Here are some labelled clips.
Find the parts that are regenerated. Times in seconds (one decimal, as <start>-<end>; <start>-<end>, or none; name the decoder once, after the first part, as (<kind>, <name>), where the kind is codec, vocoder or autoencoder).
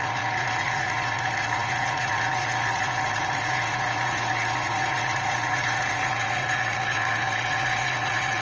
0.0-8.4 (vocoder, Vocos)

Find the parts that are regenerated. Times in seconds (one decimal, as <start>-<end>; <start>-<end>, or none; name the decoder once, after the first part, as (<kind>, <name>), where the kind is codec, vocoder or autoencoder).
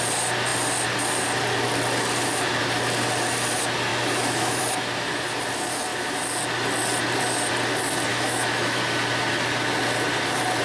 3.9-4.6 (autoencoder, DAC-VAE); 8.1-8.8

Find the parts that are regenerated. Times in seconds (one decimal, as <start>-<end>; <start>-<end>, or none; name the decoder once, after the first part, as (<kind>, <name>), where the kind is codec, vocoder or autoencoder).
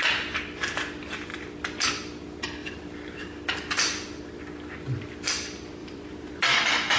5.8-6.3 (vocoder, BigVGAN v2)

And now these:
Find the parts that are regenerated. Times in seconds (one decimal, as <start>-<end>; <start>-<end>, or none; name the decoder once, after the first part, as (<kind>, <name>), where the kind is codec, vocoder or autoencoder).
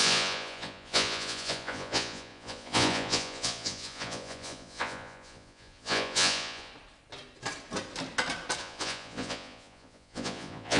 0.0-6.7 (vocoder, Vocos); 8.6-10.8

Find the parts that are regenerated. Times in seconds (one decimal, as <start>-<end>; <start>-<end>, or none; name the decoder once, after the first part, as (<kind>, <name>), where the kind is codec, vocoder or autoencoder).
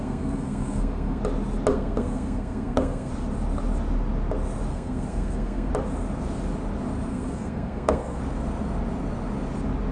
0.0-1.2 (codec, SNAC); 1.7-3.1; 4.7-5.7; 7.1-8.2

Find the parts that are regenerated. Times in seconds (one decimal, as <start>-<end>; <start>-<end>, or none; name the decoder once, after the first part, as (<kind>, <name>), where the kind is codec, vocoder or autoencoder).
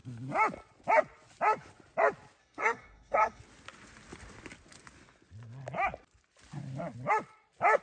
2.4-3.4 (codec, SNAC)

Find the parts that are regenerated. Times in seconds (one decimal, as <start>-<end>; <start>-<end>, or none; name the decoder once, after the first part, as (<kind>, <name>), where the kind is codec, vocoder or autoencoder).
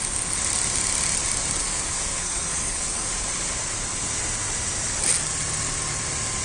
1.6-3.1 (codec, SNAC)